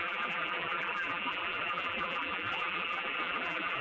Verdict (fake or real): fake